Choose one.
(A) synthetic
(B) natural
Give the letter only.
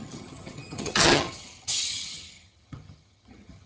A